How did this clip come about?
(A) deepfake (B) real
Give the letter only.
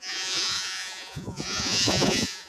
A